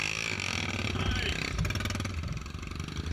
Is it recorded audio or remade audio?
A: recorded